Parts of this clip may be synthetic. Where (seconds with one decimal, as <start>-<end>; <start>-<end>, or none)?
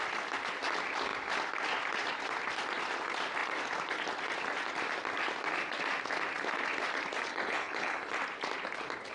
7.3-8.1